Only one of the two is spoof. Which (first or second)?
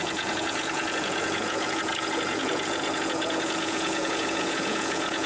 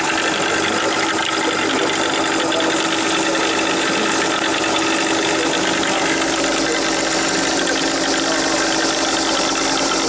first